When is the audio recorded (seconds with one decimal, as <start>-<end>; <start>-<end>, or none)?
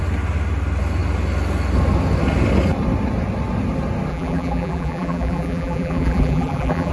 0.0-4.1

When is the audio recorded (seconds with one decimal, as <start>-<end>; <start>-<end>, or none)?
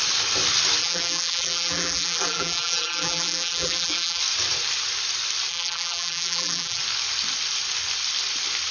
0.0-0.8; 4.2-5.5; 6.8-8.7